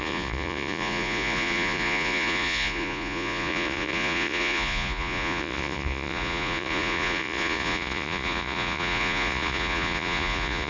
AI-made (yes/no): yes